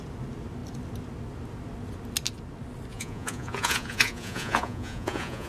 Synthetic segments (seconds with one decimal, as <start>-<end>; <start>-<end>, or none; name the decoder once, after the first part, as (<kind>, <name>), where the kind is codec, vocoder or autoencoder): 2.9-5.5 (vocoder, Vocos)

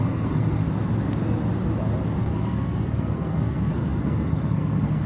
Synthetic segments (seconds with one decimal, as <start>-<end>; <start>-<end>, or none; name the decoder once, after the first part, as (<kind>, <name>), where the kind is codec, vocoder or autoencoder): 0.0-0.6 (codec, SNAC); 2.2-5.1

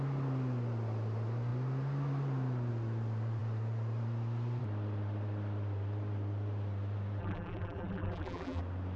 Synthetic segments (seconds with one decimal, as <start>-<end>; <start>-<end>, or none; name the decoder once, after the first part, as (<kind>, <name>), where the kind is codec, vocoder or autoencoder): 7.2-8.6 (vocoder, BigVGAN v2)

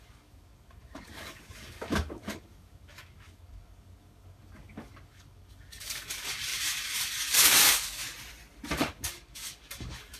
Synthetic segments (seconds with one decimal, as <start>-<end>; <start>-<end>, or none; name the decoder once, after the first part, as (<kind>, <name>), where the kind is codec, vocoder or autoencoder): 0.0-8.0 (codec, DAC); 8.7-10.2

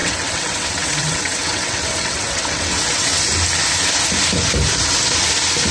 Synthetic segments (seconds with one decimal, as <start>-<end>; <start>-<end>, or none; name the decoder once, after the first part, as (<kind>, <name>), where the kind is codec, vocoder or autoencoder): 0.0-3.2 (vocoder, WaveNeXt)

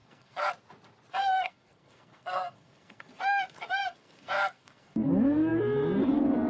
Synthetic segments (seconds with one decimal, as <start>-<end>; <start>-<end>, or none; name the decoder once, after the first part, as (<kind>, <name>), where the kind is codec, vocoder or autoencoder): 0.0-0.5 (codec, SNAC); 1.2-5.1

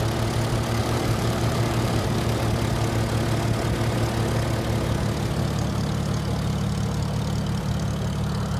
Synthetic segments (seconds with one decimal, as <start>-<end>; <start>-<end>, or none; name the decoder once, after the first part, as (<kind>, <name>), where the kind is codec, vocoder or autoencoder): 0.8-2.4 (vocoder, BigVGAN v2)

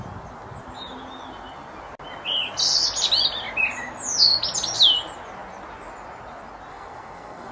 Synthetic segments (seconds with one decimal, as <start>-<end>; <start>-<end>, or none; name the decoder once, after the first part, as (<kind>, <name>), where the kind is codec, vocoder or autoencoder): 6.7-7.5 (codec, SNAC)